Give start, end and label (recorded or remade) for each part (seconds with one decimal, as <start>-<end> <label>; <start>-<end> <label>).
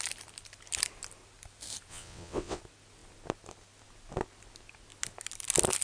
0.0-1.9 recorded; 1.9-2.6 remade; 2.6-5.8 recorded